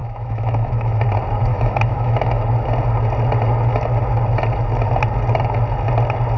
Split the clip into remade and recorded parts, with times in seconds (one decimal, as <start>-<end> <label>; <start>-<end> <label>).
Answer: 0.0-1.0 remade; 1.0-1.5 recorded; 1.5-2.4 remade; 2.4-6.4 recorded